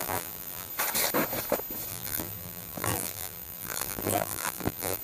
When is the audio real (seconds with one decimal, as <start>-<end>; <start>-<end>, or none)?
0.7-1.9